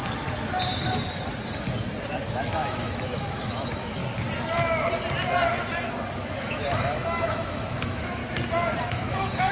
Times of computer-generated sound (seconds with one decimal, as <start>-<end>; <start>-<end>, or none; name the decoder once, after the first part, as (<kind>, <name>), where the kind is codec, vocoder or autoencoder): 2.3-4.0 (autoencoder, DAC-VAE); 6.1-8.2; 8.8-9.5